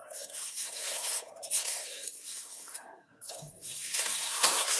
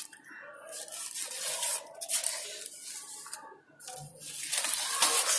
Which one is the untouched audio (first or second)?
second